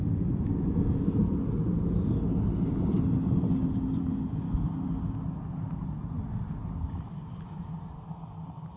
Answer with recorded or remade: recorded